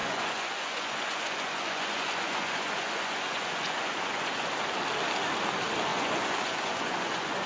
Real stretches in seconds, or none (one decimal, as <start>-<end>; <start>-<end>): 4.5-5.9